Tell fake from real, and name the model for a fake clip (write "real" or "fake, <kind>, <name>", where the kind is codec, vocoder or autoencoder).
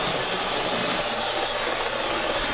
real